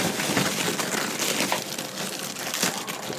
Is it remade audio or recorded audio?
remade